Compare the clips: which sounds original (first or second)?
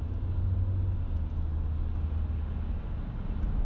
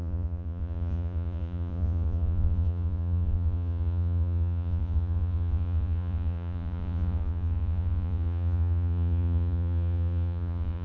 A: first